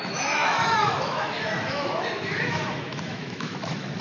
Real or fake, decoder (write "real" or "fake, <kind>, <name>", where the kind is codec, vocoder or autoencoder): fake, autoencoder, DAC-VAE